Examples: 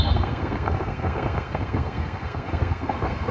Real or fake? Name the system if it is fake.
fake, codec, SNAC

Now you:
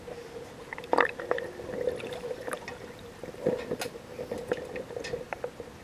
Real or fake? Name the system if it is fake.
real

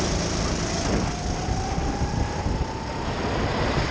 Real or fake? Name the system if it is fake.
real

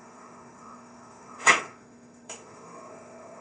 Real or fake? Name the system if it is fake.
fake, autoencoder, DAC-VAE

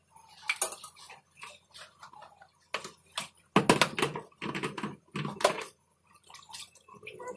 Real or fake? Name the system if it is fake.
real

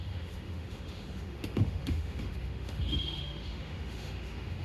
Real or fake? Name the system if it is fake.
fake, autoencoder, DAC-VAE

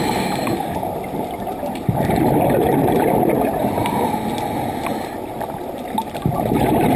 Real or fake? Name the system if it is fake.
real